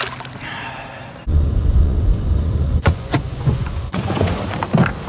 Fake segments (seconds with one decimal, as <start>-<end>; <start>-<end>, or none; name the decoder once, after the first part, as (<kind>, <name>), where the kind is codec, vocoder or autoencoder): 1.3-4.4 (vocoder, Vocos)